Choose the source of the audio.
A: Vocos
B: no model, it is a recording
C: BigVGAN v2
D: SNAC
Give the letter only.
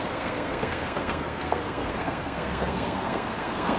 D